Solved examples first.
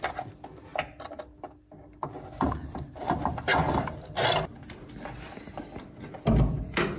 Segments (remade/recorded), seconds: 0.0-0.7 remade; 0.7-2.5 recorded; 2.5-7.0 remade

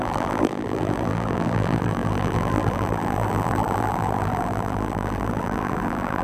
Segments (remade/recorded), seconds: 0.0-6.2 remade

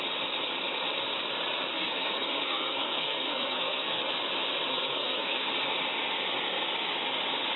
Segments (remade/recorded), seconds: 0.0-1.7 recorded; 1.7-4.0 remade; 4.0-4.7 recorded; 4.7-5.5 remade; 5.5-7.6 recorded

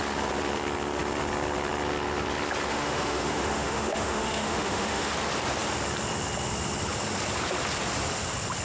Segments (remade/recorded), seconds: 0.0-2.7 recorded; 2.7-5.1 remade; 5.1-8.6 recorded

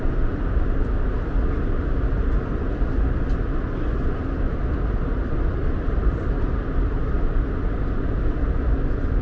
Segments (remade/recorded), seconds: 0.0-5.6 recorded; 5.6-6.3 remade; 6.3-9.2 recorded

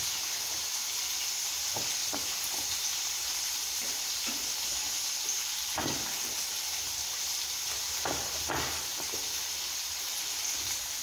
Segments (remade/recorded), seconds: 0.0-2.0 recorded; 2.0-4.1 remade; 4.1-11.0 recorded

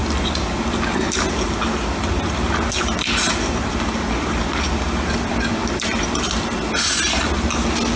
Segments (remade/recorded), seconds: 0.0-8.0 recorded